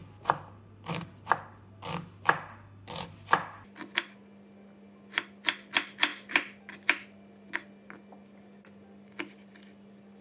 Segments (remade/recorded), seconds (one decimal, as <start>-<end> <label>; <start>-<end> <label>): 0.0-10.2 recorded